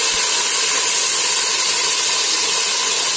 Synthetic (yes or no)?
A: no